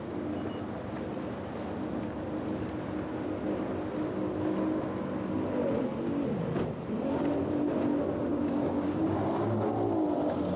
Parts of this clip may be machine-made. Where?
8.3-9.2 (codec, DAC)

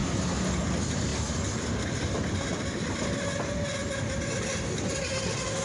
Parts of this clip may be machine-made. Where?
none

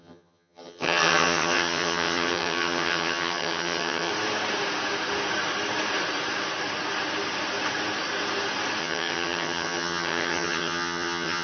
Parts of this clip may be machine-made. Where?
0.0-4.1 (vocoder, HiFi-GAN); 8.8-11.4